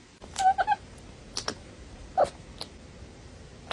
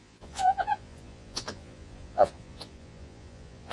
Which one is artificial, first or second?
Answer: second